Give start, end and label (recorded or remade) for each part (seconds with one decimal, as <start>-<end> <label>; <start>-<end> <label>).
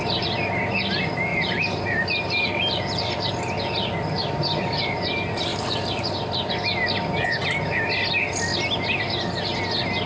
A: 0.0-1.3 recorded; 1.3-3.3 remade; 3.3-4.2 recorded; 4.2-5.1 remade; 5.1-5.5 recorded; 5.5-6.7 remade; 6.7-10.1 recorded